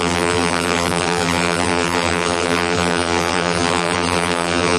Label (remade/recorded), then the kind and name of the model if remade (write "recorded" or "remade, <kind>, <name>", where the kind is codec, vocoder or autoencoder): remade, vocoder, BigVGAN v2